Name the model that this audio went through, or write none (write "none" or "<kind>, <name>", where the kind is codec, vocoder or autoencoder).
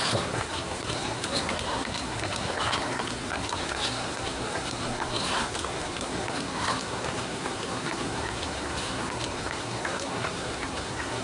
codec, SNAC